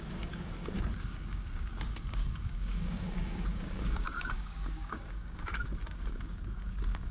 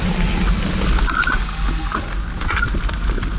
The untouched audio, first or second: second